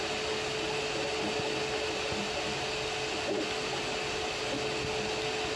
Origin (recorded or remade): recorded